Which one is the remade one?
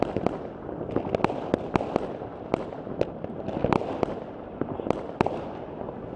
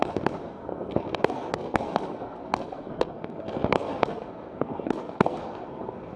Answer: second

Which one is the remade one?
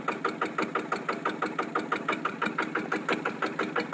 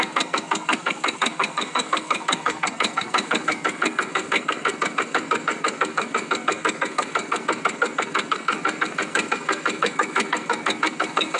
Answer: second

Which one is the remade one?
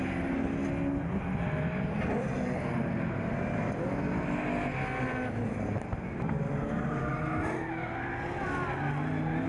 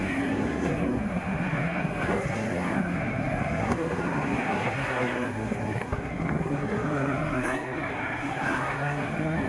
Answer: second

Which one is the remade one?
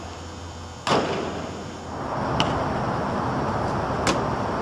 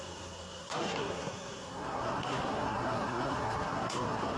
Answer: second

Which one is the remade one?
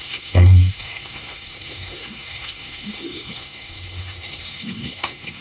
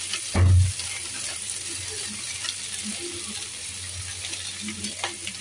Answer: first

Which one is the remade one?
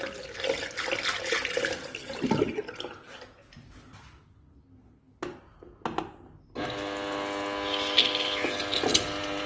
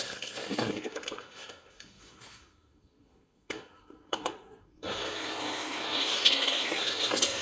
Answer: second